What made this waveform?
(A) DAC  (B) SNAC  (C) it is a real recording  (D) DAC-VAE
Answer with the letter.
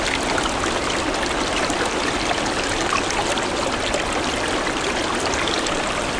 C